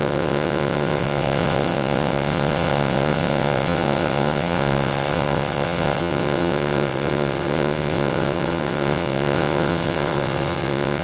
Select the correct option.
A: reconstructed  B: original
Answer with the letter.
A